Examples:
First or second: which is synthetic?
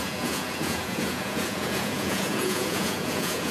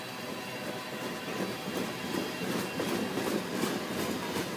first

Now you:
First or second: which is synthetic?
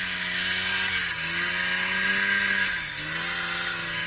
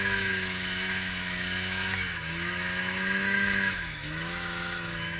second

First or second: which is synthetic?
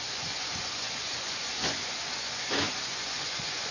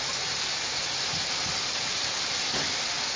first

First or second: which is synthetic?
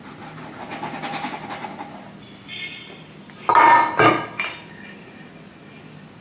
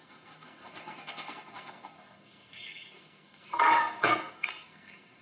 second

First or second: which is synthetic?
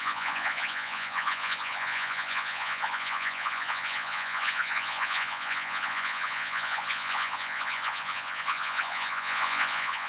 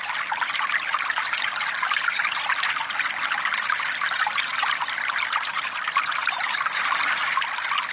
first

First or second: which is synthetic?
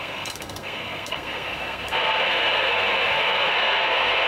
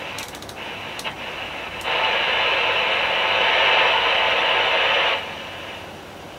first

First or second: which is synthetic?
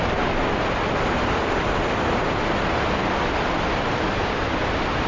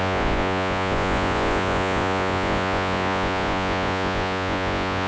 second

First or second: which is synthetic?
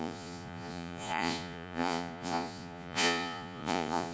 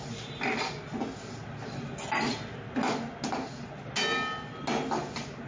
first